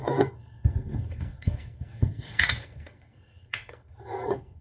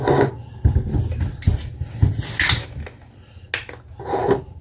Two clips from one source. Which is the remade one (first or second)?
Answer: first